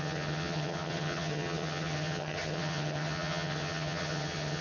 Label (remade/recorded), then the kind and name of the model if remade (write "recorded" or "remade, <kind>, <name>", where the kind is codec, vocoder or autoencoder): remade, vocoder, HiFi-GAN